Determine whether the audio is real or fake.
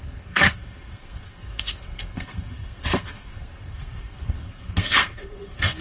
fake